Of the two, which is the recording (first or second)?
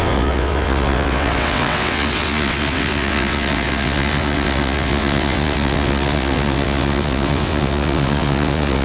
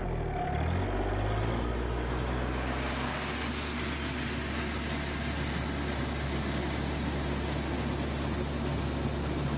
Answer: second